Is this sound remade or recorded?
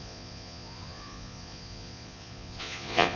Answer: remade